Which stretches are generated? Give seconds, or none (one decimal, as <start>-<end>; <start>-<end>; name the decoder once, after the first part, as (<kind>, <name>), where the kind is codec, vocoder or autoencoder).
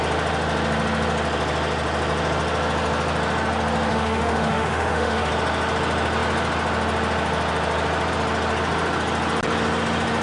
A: 3.9-5.3 (autoencoder, DAC-VAE)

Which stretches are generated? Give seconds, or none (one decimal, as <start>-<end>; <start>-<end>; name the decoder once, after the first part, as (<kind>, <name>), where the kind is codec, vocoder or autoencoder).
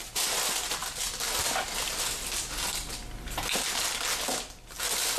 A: 0.8-1.8 (vocoder, BigVGAN v2)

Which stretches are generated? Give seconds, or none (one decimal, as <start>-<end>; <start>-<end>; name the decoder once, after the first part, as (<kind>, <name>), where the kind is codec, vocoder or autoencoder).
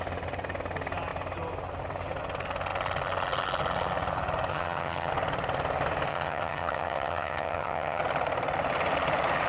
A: 4.5-5.1 (vocoder, HiFi-GAN); 6.1-8.0